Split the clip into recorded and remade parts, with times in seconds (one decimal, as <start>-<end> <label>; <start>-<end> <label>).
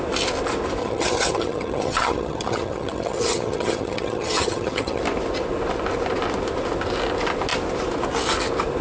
0.0-0.8 recorded; 0.8-5.0 remade; 5.0-8.8 recorded